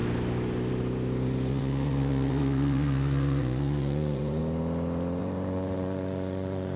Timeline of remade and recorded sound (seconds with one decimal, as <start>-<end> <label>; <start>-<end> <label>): 0.0-1.5 recorded; 1.5-4.4 remade; 4.4-5.2 recorded; 5.2-6.8 remade